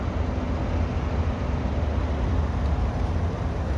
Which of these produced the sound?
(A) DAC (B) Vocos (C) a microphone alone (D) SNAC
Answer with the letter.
C